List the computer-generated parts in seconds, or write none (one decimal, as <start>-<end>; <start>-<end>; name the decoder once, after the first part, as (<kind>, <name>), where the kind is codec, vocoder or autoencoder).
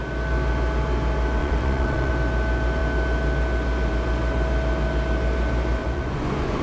1.4-2.1 (vocoder, Vocos); 5.8-6.6